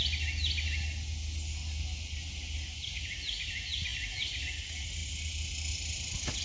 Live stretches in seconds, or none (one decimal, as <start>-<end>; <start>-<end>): 0.0-6.4